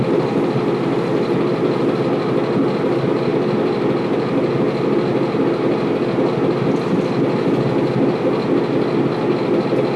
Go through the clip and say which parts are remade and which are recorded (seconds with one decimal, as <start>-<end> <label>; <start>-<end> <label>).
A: 0.0-10.0 recorded